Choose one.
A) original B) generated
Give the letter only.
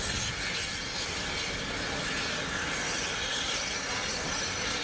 A